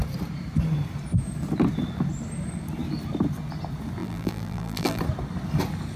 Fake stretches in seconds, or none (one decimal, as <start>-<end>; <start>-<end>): 4.0-5.0